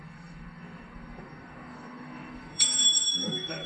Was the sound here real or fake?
fake